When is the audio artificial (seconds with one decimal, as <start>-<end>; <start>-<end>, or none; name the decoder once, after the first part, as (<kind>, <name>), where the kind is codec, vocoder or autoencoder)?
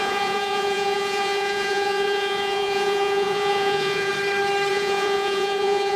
0.0-4.1 (vocoder, Vocos); 4.7-6.0